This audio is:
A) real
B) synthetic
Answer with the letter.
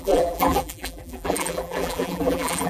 B